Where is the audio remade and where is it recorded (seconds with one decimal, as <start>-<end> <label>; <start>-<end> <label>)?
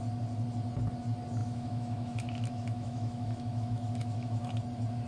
0.0-1.4 recorded; 1.4-4.5 remade; 4.5-5.1 recorded